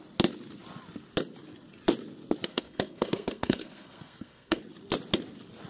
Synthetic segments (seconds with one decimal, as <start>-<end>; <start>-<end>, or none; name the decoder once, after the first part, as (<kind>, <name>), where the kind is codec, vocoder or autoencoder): 2.5-4.6 (codec, SNAC)